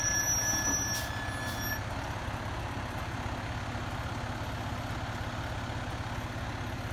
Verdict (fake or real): real